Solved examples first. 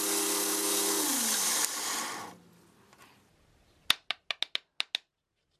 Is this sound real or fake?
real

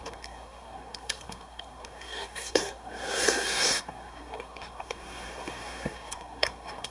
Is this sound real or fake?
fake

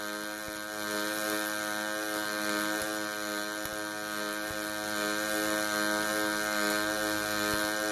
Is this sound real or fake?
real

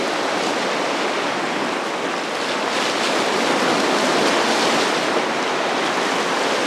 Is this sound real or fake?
real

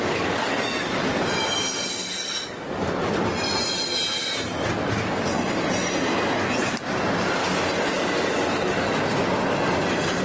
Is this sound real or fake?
real